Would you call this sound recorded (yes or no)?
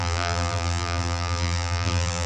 no